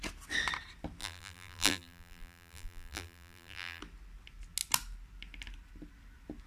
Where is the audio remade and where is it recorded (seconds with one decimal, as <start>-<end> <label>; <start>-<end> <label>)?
0.0-1.0 recorded; 1.0-3.8 remade; 3.8-6.5 recorded